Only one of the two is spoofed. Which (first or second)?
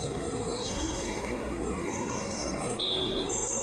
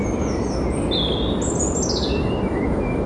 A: first